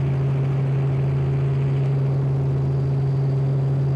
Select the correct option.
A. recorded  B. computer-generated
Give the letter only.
A